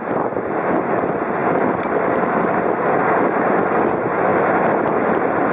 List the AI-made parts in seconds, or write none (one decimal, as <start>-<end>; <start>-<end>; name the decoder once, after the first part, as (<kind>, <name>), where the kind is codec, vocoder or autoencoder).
none